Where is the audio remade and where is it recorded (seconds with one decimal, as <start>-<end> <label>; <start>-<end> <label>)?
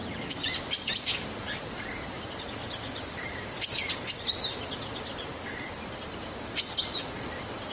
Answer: 0.0-7.7 recorded